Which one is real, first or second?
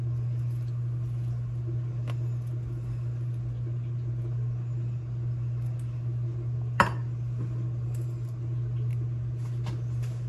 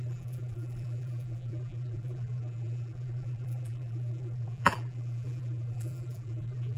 first